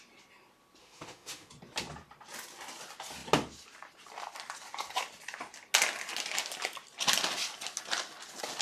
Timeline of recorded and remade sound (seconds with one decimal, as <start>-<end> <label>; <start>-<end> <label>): 0.0-0.8 recorded; 0.8-1.5 remade; 1.5-8.6 recorded